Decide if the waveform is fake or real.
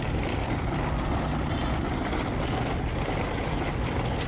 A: real